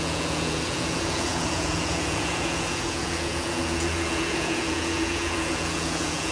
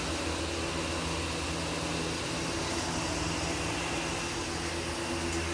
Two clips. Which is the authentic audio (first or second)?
second